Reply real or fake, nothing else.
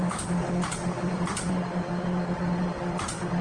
real